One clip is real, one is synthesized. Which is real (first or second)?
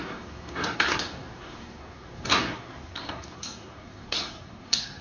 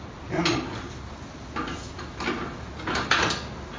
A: second